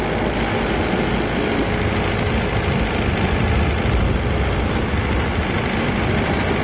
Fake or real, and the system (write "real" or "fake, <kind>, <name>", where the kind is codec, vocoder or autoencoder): real